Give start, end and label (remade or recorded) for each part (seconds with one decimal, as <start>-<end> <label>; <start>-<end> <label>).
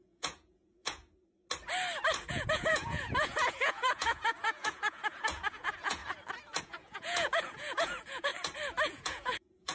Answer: 0.0-1.0 remade; 1.0-2.3 recorded; 2.3-6.0 remade; 6.0-6.6 recorded; 6.6-8.3 remade; 8.3-8.9 recorded; 8.9-9.7 remade